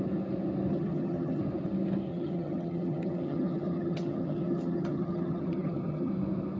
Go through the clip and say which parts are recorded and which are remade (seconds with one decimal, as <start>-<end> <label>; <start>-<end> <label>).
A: 0.0-0.7 recorded; 0.7-1.4 remade; 1.4-2.1 recorded; 2.1-6.1 remade; 6.1-6.6 recorded